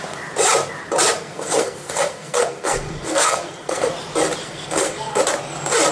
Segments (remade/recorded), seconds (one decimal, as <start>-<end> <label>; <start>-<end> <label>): 0.0-1.2 recorded; 1.2-3.9 remade; 3.9-4.4 recorded; 4.4-5.2 remade; 5.2-5.9 recorded